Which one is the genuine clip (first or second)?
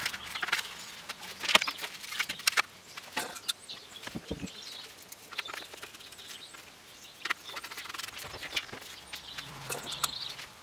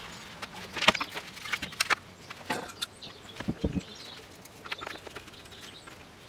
second